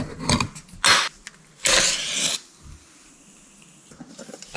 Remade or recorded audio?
recorded